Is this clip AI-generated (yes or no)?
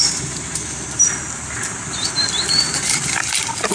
no